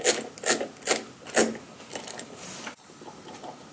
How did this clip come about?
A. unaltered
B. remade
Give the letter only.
A